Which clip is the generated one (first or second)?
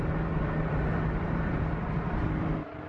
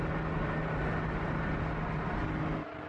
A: first